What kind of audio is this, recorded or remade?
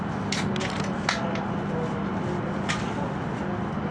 recorded